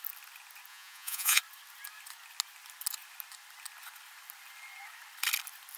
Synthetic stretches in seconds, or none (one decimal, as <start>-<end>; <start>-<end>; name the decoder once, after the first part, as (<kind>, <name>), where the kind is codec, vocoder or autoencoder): 0.7-1.4 (vocoder, Vocos)